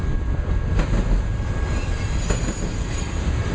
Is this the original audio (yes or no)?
yes